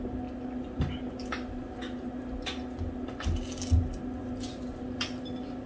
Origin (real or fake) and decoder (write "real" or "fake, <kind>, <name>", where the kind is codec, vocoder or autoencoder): real